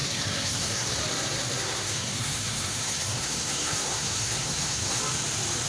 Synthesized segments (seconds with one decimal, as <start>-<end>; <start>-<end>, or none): 0.0-0.9; 1.6-5.0